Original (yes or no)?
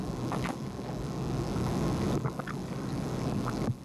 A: no